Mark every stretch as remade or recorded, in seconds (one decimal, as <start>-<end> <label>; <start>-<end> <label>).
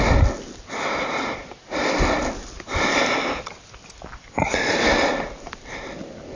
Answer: 0.0-6.4 recorded